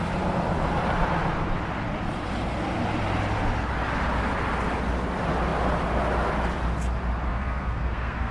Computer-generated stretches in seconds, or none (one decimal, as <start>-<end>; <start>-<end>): 7.3-8.3